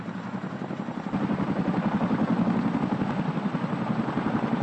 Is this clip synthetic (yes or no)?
no